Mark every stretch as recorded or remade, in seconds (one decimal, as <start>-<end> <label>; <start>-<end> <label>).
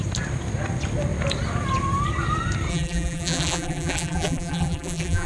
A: 0.0-2.7 recorded; 2.7-5.3 remade